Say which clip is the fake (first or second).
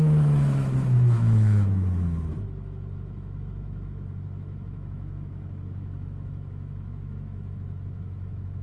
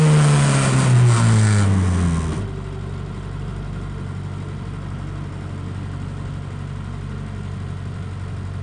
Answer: first